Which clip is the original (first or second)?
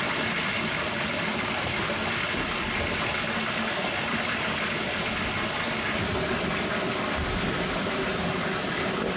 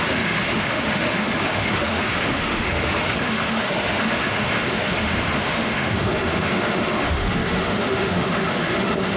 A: first